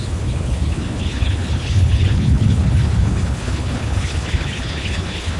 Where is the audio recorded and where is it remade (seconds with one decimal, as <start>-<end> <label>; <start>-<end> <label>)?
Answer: 0.0-5.4 remade